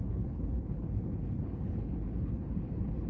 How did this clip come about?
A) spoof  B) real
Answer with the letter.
A